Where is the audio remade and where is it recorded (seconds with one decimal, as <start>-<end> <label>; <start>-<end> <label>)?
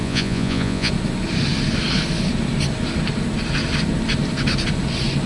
0.0-0.9 remade; 0.9-5.3 recorded